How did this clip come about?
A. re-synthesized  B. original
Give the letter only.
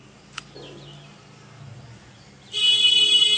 B